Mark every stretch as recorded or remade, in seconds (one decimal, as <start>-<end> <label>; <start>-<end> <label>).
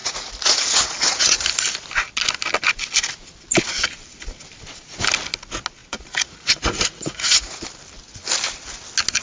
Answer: 0.0-1.4 remade; 1.4-5.8 recorded; 5.8-7.6 remade; 7.6-9.2 recorded